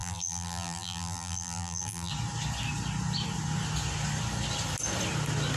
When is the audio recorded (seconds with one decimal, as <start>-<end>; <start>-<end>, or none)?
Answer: 2.1-5.6